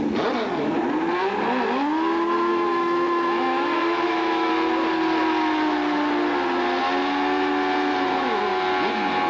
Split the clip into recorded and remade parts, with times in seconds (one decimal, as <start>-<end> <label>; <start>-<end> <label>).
0.0-2.5 recorded; 2.5-4.5 remade; 4.5-9.3 recorded